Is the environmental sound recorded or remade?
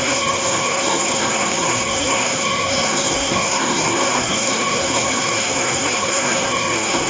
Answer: remade